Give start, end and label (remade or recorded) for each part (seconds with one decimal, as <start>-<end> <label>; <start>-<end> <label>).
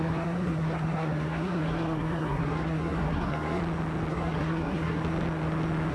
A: 0.0-3.6 remade; 3.6-4.1 recorded; 4.1-5.0 remade; 5.0-5.9 recorded